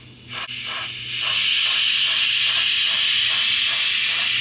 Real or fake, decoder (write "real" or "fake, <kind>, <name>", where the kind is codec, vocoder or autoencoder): real